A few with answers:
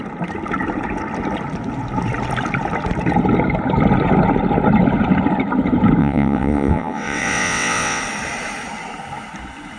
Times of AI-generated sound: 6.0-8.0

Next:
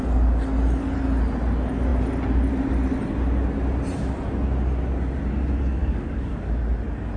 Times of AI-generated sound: 5.8-6.5

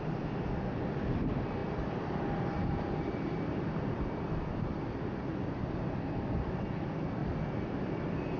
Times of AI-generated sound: 1.6-5.4; 7.2-8.4